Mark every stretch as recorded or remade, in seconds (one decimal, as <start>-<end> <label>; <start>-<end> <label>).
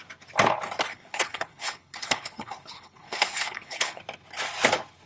0.0-0.9 recorded; 0.9-4.0 remade; 4.0-5.1 recorded